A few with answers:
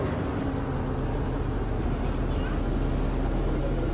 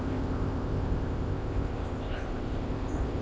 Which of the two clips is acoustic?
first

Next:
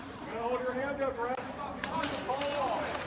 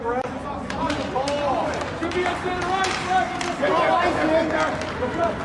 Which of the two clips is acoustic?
second